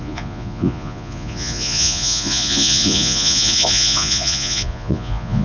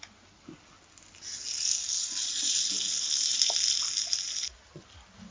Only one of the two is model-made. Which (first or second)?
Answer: first